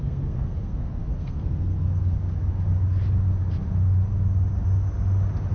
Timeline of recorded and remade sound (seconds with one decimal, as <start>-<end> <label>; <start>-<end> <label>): 0.0-2.0 remade; 2.0-5.5 recorded